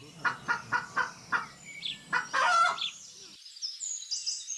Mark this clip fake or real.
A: real